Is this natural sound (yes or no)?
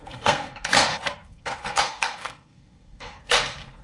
no